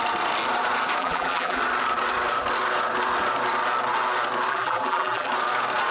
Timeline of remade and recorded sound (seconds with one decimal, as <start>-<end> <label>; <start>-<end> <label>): 0.0-1.0 recorded; 1.0-1.6 remade; 1.6-4.5 recorded; 4.5-5.3 remade; 5.3-5.9 recorded